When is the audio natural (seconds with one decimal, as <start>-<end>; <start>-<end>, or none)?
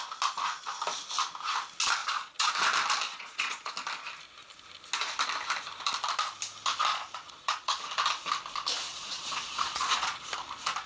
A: 0.0-2.0; 2.5-3.1; 3.7-6.9; 7.8-8.9; 10.3-10.9